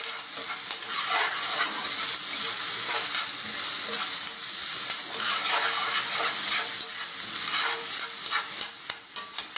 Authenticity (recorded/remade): recorded